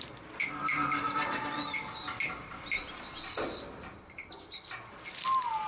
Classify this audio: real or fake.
fake